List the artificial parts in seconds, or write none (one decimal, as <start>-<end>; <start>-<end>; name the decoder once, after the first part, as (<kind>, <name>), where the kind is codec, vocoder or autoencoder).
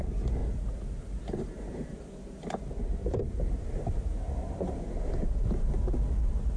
0.4-2.6 (vocoder, BigVGAN v2); 3.0-5.8